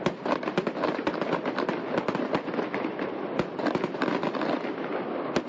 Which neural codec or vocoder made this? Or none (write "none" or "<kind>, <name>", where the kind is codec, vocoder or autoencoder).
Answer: none